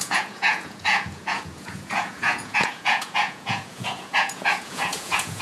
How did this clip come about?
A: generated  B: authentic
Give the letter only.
A